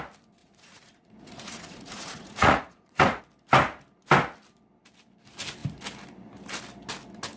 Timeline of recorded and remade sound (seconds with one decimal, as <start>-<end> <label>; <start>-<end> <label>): 0.0-0.4 recorded; 0.4-3.2 remade; 3.2-7.4 recorded